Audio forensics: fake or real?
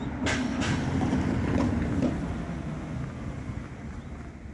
real